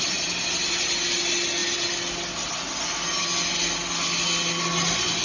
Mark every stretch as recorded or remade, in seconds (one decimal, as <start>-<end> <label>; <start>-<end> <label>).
0.0-5.2 recorded

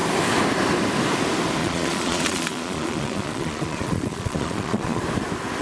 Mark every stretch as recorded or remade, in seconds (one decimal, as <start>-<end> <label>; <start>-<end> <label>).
0.0-1.6 recorded; 1.6-5.0 remade; 5.0-5.6 recorded

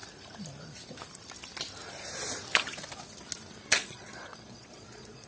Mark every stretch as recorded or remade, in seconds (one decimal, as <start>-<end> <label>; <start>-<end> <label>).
0.0-3.7 recorded; 3.7-5.3 remade

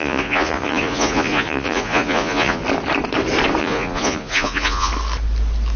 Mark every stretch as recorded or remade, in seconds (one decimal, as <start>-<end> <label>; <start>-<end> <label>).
0.0-2.6 remade; 2.6-3.6 recorded; 3.6-4.9 remade; 4.9-5.8 recorded

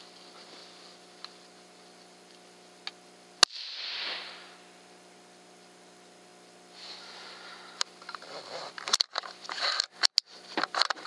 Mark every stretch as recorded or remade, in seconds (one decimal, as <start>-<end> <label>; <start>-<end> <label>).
0.0-11.1 recorded